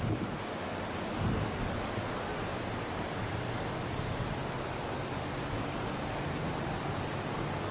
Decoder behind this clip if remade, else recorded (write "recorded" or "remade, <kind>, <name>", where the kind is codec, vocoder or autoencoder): recorded